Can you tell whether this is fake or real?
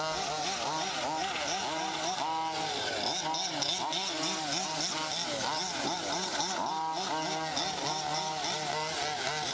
real